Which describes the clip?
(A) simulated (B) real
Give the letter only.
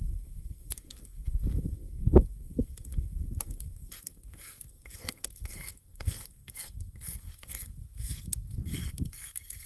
A